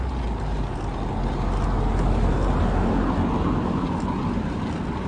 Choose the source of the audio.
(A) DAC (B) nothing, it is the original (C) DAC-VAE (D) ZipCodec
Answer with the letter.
B